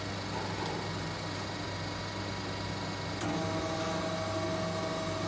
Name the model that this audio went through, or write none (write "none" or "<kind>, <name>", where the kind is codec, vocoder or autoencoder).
none